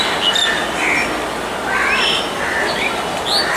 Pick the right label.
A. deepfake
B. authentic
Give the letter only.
B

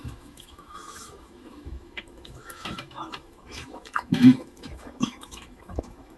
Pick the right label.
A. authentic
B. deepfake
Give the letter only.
B